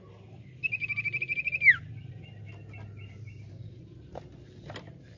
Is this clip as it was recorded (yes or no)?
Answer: yes